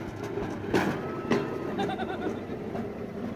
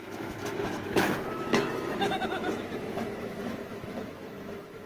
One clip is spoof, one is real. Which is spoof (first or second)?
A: second